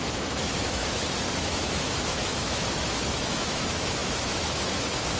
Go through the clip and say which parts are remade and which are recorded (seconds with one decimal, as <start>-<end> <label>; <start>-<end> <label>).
0.0-0.8 remade; 0.8-1.4 recorded; 1.4-5.2 remade